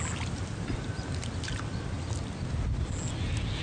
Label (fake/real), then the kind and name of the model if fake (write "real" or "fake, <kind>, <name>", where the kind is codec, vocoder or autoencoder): real